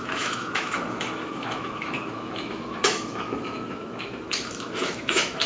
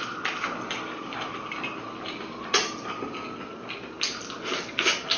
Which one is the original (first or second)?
second